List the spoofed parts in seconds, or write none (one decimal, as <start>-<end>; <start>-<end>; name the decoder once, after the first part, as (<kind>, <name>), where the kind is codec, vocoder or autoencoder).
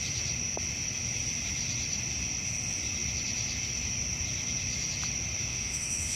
5.5-6.2 (autoencoder, DAC-VAE)